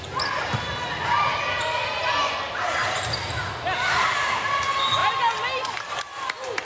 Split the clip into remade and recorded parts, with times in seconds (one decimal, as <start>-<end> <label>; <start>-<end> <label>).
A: 0.0-6.6 recorded